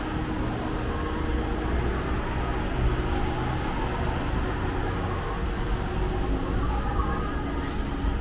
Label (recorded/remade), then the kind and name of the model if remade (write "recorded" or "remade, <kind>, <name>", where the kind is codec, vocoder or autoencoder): recorded